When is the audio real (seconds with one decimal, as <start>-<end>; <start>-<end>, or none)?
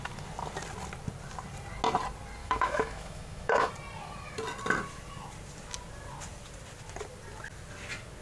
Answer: 0.0-2.4; 3.7-8.2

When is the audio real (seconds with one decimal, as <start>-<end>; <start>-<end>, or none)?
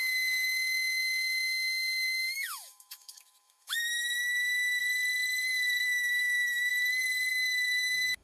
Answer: 4.8-5.8; 6.7-7.3